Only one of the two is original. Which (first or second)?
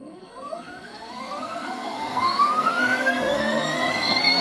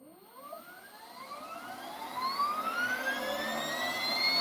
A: second